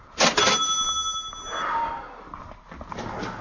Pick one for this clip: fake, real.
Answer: real